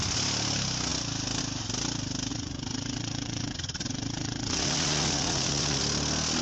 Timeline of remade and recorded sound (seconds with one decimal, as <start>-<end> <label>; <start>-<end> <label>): 0.0-2.3 recorded; 2.3-5.8 remade; 5.8-6.4 recorded